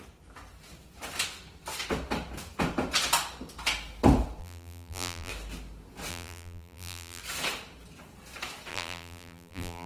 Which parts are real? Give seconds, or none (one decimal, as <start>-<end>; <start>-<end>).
0.0-4.4; 5.3-6.1; 7.2-8.7